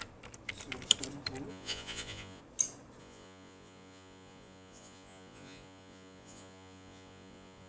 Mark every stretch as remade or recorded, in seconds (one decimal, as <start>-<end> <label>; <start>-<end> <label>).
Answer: 0.0-1.5 recorded; 1.5-2.4 remade; 2.4-3.0 recorded; 3.0-7.7 remade